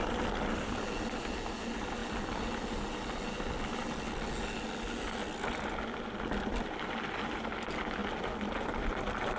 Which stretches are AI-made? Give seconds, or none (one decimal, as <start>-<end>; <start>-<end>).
none